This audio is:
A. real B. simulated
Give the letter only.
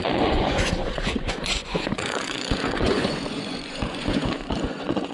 B